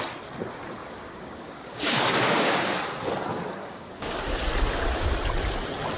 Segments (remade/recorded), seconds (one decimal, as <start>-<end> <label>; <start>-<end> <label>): 0.0-0.8 recorded; 0.8-2.7 remade; 2.7-3.3 recorded; 3.3-4.2 remade; 4.2-6.0 recorded